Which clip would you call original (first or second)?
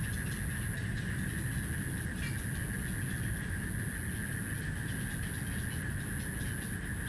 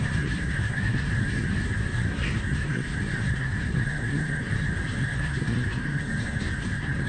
first